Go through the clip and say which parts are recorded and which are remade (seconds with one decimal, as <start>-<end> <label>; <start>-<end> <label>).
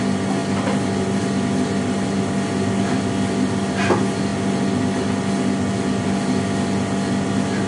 0.0-7.7 recorded